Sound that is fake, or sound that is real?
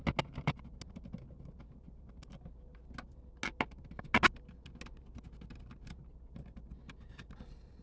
real